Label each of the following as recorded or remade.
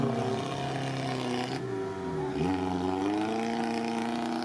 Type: recorded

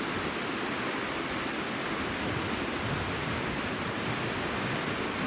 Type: recorded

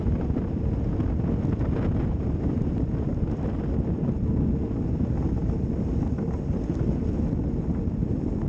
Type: recorded